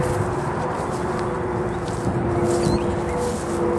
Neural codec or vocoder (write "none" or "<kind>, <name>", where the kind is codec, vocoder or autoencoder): none